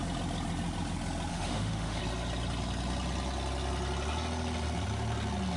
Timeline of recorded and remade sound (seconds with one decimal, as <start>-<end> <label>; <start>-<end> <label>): 0.0-1.3 recorded; 1.3-2.0 remade; 2.0-5.6 recorded